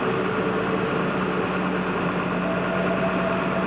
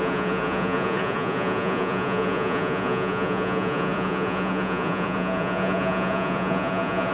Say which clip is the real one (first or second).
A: first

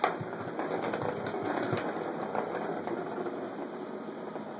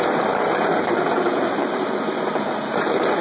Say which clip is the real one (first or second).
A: first